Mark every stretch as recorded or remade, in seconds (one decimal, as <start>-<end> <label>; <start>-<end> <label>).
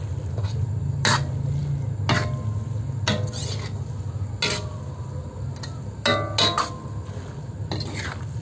0.0-8.4 recorded